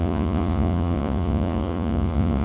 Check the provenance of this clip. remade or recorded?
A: remade